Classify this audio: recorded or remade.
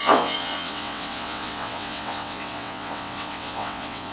remade